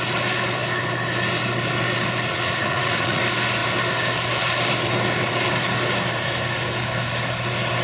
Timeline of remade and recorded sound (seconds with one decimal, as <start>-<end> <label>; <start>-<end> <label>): 0.0-2.3 recorded; 2.3-3.2 remade; 3.2-7.8 recorded